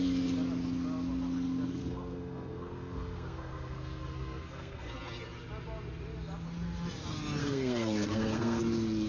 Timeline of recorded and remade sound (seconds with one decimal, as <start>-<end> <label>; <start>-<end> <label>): 0.0-1.8 recorded; 1.8-4.9 remade; 4.9-7.4 recorded; 7.4-8.6 remade; 8.6-9.1 recorded